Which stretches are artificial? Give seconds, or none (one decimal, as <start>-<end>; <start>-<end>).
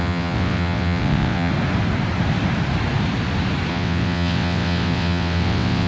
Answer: 0.0-1.5; 3.7-5.9